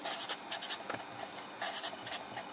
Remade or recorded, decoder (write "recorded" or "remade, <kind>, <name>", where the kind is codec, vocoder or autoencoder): recorded